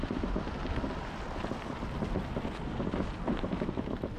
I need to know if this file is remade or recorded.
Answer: recorded